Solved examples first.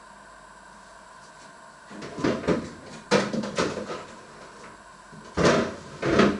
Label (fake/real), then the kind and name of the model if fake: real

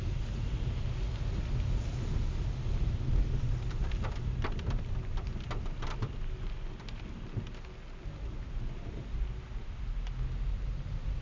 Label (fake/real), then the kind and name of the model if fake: real